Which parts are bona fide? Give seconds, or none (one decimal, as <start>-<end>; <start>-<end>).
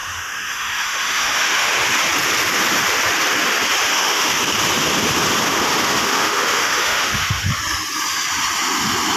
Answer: 1.7-3.9; 4.4-5.7; 7.5-9.2